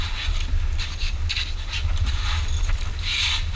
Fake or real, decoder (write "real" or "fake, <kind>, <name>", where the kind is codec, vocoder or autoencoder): real